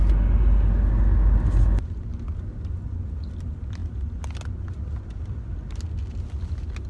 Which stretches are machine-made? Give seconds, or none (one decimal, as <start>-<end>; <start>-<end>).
none